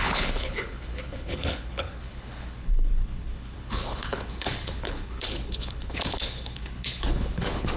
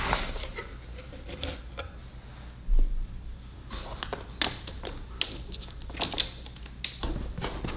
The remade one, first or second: first